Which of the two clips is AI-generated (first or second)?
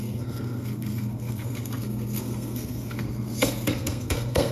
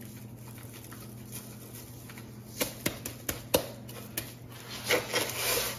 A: first